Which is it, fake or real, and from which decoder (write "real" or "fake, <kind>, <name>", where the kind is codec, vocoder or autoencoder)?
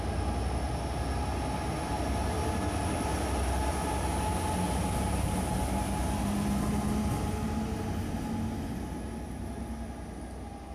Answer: real